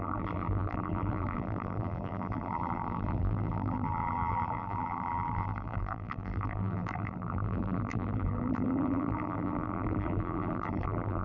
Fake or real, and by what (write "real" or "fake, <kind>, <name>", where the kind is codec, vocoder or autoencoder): fake, vocoder, BigVGAN v2